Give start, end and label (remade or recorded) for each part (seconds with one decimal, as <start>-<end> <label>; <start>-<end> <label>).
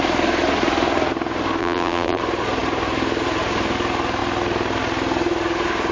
0.0-1.6 recorded; 1.6-2.2 remade; 2.2-5.9 recorded